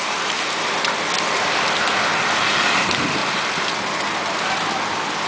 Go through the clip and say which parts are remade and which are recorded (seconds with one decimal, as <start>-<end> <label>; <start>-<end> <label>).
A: 0.0-5.3 recorded